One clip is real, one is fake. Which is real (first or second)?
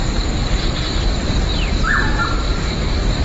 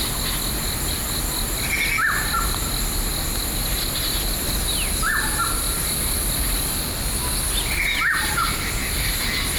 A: second